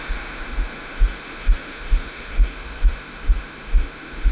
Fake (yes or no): yes